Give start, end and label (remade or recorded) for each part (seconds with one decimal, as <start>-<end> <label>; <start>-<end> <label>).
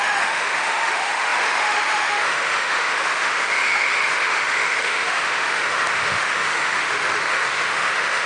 0.0-8.3 remade